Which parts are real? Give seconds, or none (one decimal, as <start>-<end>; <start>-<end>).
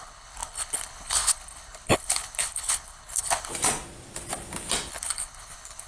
3.5-4.9